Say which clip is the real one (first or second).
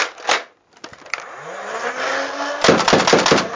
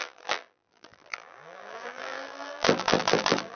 first